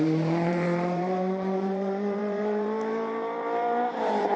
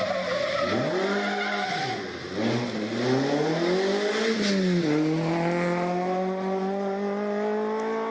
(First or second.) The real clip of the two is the second